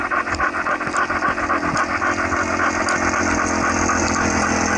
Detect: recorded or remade recorded